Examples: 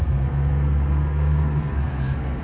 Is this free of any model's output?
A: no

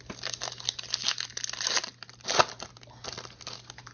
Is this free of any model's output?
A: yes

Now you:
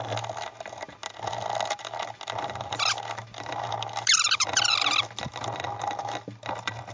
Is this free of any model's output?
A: yes